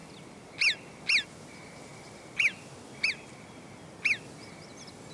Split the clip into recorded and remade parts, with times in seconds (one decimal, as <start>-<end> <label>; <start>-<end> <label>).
0.0-5.1 recorded